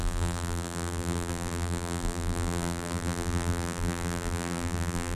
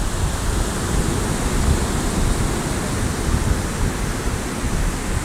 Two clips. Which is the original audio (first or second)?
second